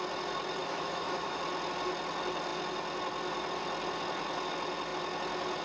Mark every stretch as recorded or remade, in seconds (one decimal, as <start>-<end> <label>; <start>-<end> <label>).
0.0-0.6 recorded; 0.6-1.4 remade; 1.4-5.6 recorded